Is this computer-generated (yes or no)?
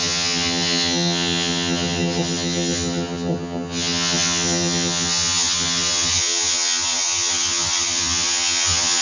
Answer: yes